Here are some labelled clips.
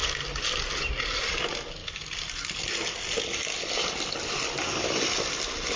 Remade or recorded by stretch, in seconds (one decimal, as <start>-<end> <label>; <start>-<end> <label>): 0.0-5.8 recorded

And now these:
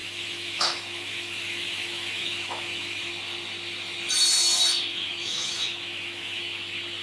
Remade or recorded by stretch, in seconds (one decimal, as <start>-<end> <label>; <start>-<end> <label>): 0.0-3.1 remade; 3.1-4.9 recorded; 4.9-6.4 remade; 6.4-7.0 recorded

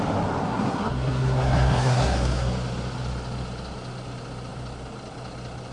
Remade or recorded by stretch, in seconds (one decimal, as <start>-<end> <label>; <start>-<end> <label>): 0.0-0.4 recorded; 0.4-2.5 remade; 2.5-5.7 recorded

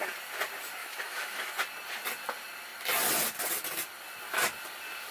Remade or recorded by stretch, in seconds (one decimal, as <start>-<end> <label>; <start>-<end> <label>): 0.0-0.8 recorded; 0.8-1.5 remade; 1.5-5.1 recorded

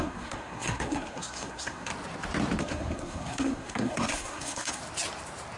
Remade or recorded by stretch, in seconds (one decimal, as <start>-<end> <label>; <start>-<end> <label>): 0.0-1.9 remade; 1.9-2.6 recorded; 2.6-4.8 remade; 4.8-5.6 recorded